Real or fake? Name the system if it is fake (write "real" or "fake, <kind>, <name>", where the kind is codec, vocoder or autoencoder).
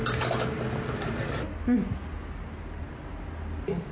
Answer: real